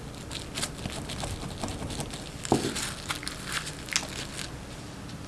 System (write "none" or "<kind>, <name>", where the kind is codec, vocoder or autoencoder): none